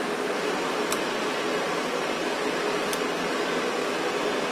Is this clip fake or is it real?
real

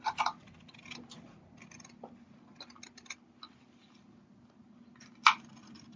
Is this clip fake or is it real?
real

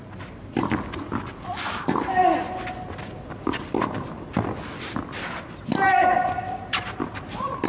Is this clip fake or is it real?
real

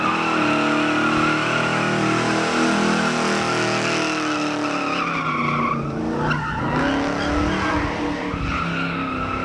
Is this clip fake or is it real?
real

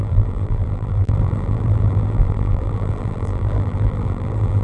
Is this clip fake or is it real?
fake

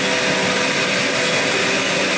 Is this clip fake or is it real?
real